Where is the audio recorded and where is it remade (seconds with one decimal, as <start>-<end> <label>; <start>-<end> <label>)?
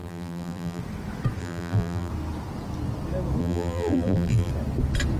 0.0-0.8 remade; 0.8-1.4 recorded; 1.4-2.1 remade; 2.1-3.4 recorded; 3.4-4.5 remade; 4.5-5.2 recorded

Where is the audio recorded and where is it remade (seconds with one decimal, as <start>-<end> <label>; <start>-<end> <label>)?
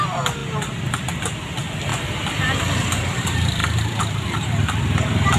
0.0-0.4 remade; 0.4-1.2 recorded; 1.2-5.4 remade